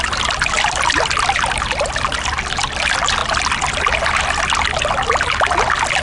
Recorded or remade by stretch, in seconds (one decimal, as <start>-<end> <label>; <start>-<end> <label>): 0.0-6.0 recorded